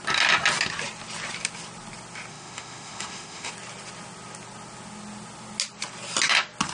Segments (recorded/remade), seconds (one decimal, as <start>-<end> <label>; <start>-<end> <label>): 0.0-2.3 recorded; 2.3-3.5 remade; 3.5-6.7 recorded